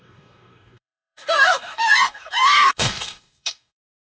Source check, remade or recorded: remade